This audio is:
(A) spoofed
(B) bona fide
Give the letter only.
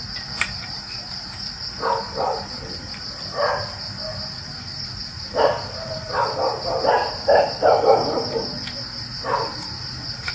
B